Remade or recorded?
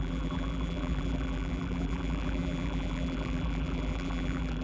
remade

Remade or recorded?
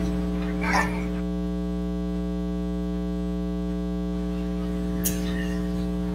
recorded